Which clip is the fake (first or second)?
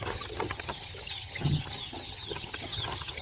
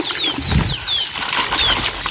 first